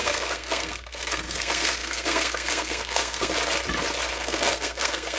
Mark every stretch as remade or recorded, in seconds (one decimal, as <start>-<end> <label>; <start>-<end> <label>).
0.0-3.3 remade; 3.3-4.1 recorded; 4.1-5.2 remade